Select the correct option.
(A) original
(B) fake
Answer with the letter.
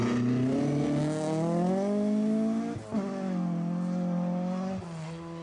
A